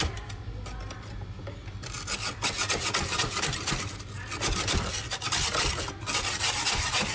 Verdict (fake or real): real